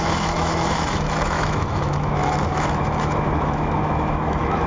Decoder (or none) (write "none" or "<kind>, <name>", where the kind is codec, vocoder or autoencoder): autoencoder, DAC-VAE